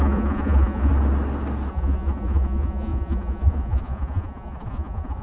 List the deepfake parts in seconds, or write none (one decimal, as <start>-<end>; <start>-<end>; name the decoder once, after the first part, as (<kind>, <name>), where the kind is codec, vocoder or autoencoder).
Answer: 0.0-0.9 (vocoder, Vocos); 1.7-5.2